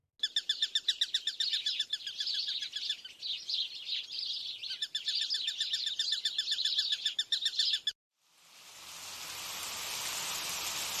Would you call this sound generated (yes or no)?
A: no